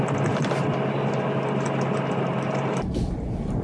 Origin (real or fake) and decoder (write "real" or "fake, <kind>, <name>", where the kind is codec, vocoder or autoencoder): real